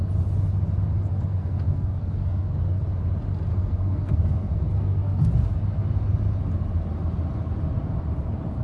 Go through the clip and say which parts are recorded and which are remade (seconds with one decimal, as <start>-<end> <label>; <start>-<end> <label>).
0.0-1.1 recorded; 1.1-2.8 remade; 2.8-3.5 recorded; 3.5-5.3 remade; 5.3-8.6 recorded